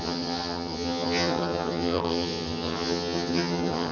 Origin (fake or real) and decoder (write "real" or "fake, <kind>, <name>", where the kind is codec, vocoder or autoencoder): fake, vocoder, HiFi-GAN